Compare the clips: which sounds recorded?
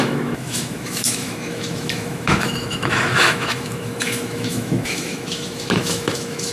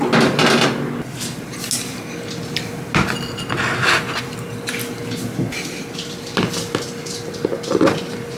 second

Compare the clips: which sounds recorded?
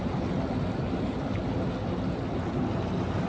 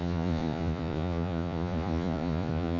first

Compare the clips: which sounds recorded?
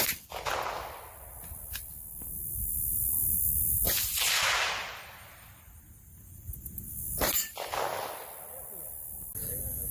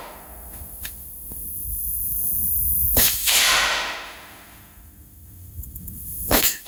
first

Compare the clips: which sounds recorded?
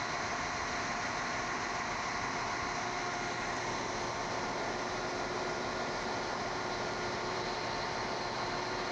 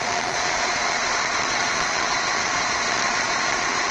first